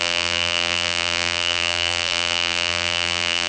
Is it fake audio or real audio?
fake